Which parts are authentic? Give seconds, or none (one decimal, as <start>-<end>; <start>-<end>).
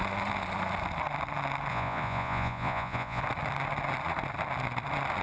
0.0-1.7; 3.2-5.2